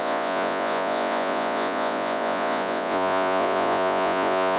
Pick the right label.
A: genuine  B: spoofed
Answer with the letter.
B